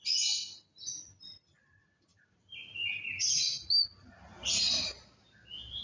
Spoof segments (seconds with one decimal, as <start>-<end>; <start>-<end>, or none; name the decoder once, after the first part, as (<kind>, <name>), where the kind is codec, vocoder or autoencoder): 2.1-2.9 (vocoder, BigVGAN v2)